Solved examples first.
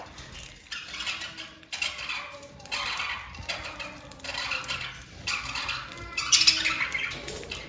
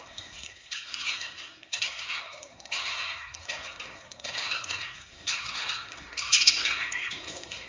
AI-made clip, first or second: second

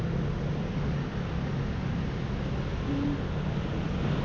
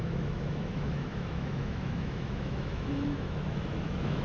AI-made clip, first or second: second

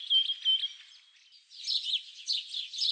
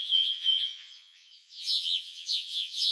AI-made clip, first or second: second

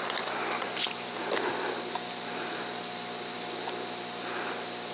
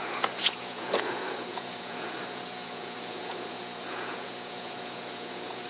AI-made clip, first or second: second